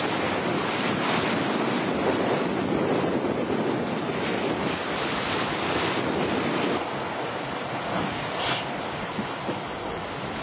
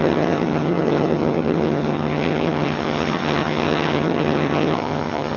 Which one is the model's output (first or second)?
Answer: second